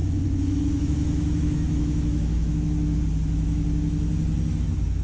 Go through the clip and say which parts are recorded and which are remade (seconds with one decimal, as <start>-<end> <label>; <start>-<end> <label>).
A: 0.0-3.0 remade; 3.0-5.0 recorded